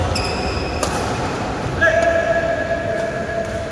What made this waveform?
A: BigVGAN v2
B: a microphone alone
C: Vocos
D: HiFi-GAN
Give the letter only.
B